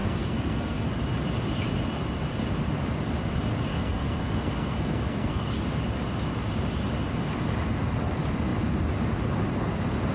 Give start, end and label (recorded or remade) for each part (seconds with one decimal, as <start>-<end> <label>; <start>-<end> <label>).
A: 0.0-0.9 remade; 0.9-3.7 recorded; 3.7-5.5 remade; 5.5-10.1 recorded